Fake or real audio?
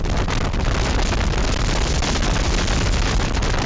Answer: real